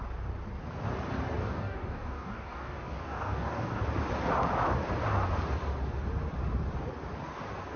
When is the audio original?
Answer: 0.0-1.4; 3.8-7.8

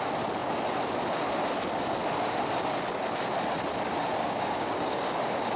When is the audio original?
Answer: 0.0-4.2

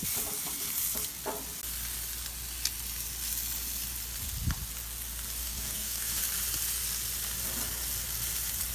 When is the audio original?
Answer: 0.0-5.4; 6.2-8.7